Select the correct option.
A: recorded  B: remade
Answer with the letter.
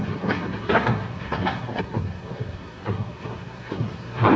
B